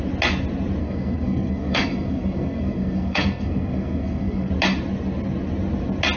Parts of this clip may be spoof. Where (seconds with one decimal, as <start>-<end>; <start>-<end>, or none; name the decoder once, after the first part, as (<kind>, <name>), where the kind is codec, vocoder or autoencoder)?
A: 0.8-4.5 (codec, SNAC)